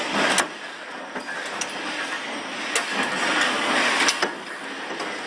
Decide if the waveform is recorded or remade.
recorded